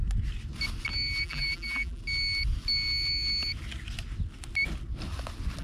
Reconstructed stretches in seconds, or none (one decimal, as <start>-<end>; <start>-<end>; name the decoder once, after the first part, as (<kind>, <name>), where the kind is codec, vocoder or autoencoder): 1.2-2.0 (vocoder, BigVGAN v2)